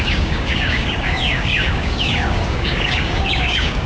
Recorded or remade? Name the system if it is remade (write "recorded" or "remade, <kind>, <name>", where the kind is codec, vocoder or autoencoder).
remade, codec, DAC